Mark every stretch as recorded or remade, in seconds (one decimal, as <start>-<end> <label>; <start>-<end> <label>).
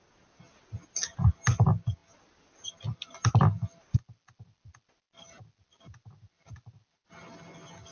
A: 0.0-7.9 recorded